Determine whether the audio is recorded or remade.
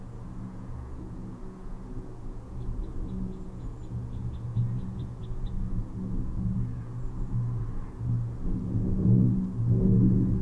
remade